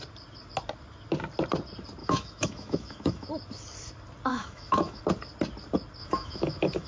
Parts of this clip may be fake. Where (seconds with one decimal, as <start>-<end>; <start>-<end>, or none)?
2.0-3.3; 4.3-5.0; 6.0-6.9